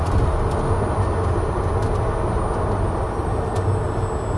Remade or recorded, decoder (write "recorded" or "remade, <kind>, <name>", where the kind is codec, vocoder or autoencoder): recorded